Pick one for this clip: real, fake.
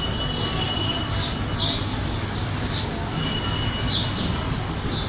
real